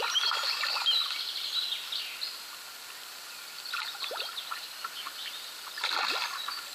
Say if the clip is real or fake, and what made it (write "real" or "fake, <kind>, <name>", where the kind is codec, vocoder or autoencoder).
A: real